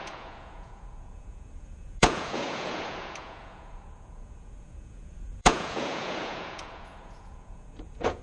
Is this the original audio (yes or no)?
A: no